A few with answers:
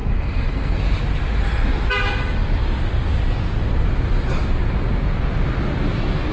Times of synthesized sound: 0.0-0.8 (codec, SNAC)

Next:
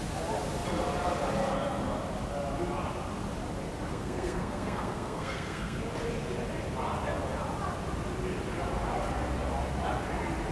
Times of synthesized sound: 3.9-5.8 (codec, SNAC)

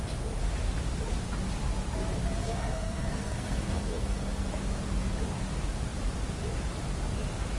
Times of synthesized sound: 2.4-4.5 (codec, SNAC)

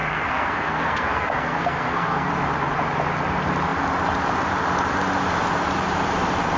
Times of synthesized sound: 0.0-2.3 (codec, SNAC)

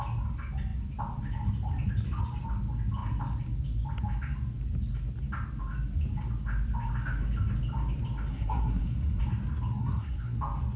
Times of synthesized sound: 8.3-9.2 (codec, SNAC); 9.8-10.4